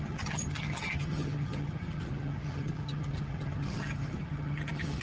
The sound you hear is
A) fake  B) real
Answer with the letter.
A